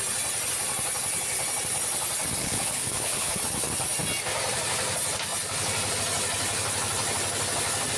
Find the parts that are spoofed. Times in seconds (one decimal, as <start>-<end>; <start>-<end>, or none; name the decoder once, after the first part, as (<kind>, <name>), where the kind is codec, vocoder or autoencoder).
2.4-3.4 (codec, HILCodec)